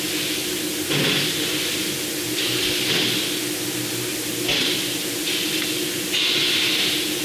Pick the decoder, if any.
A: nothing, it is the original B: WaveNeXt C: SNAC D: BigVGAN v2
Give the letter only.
A